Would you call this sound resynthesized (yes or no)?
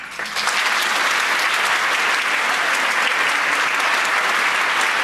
no